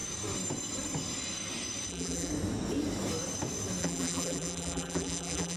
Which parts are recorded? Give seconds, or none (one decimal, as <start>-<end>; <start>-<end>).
0.0-1.9; 2.3-3.8